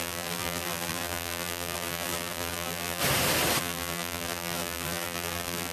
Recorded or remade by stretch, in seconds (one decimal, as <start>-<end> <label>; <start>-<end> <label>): 0.0-3.0 remade; 3.0-3.6 recorded; 3.6-5.7 remade